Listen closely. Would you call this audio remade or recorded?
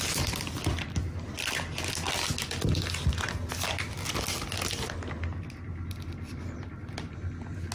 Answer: recorded